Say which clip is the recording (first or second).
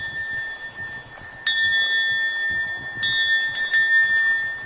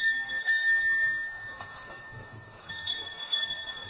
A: first